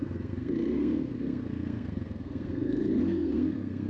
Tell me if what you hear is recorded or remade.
remade